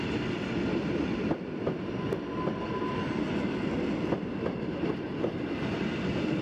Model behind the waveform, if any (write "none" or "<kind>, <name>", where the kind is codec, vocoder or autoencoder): none